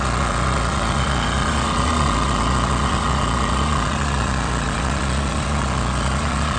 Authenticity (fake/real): fake